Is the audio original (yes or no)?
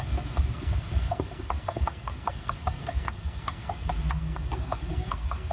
no